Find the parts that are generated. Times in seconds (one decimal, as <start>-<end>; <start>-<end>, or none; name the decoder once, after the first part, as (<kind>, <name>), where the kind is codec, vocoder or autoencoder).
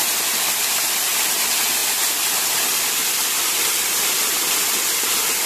1.8-4.5 (vocoder, BigVGAN v2)